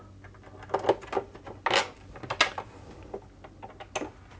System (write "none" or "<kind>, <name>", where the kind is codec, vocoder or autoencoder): none